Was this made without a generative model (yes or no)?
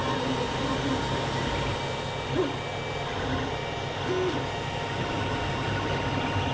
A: yes